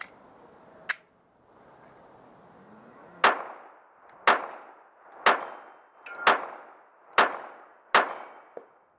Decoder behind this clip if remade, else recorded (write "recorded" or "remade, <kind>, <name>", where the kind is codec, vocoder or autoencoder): recorded